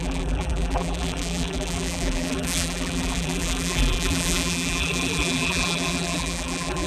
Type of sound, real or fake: fake